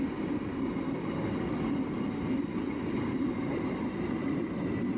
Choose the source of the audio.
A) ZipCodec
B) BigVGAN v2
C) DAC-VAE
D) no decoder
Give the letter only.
D